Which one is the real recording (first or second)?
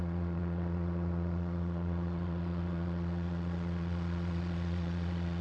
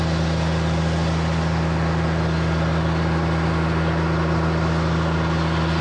second